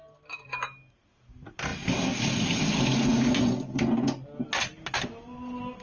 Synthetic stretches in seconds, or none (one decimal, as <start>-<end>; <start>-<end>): none